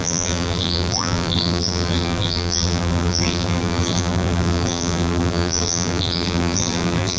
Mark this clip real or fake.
fake